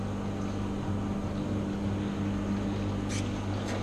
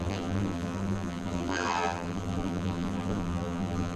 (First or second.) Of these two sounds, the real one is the first